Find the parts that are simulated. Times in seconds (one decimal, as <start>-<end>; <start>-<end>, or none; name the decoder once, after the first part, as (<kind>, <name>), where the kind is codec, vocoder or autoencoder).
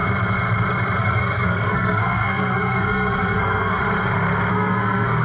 1.0-3.8 (codec, SNAC); 4.5-5.2